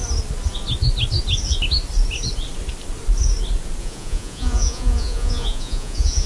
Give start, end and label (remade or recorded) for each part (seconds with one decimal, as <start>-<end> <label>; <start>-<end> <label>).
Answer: 0.0-3.8 recorded; 3.8-6.3 remade